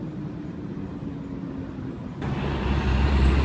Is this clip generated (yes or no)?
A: no